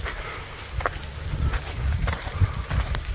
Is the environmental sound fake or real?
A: real